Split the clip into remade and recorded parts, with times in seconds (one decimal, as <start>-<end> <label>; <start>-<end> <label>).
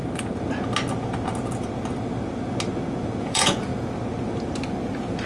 0.0-3.2 recorded; 3.2-3.7 remade; 3.7-5.3 recorded